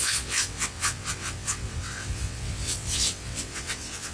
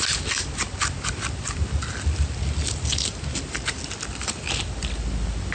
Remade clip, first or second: first